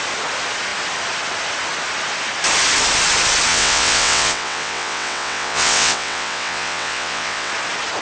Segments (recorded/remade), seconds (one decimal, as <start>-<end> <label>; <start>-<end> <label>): 0.0-3.5 recorded; 3.5-7.5 remade; 7.5-8.0 recorded